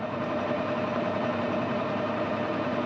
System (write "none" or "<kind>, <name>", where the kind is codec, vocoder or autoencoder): vocoder, BigVGAN v2